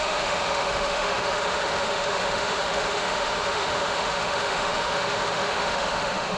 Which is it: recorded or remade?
remade